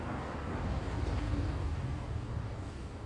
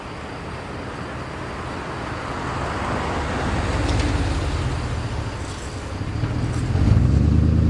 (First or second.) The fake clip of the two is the first